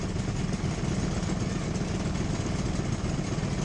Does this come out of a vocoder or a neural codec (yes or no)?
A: no